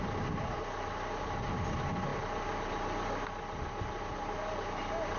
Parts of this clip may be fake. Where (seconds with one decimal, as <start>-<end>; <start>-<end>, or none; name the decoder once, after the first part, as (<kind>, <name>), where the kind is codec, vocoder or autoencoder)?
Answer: none